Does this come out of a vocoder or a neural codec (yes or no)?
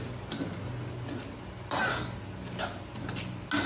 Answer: no